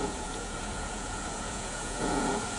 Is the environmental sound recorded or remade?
remade